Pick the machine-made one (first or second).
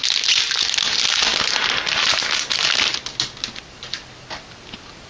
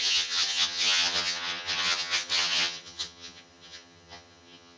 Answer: second